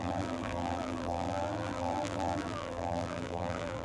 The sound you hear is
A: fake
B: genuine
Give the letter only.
A